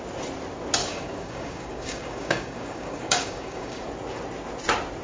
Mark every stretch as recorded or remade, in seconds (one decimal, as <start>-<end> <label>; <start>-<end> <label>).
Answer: 0.0-0.8 recorded; 0.8-3.8 remade; 3.8-5.0 recorded